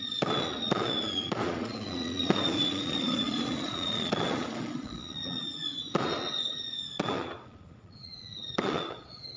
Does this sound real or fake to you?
fake